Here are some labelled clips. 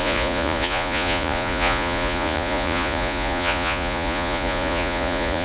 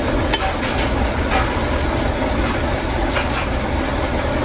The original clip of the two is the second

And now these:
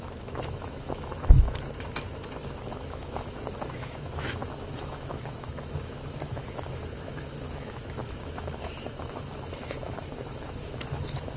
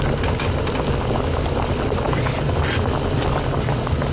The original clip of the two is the second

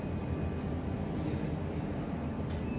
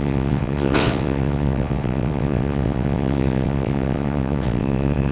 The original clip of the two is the first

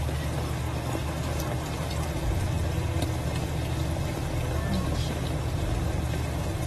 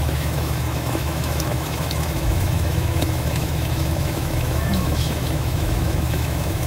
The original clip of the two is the first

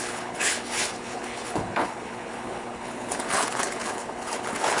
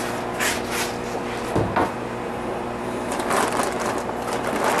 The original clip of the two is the second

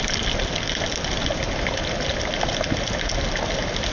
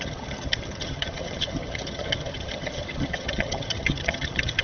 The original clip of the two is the first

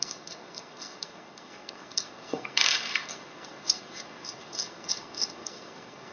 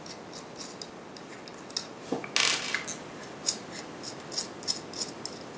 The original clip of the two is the second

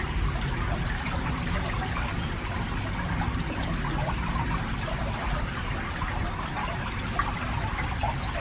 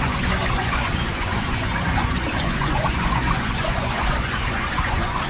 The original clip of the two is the first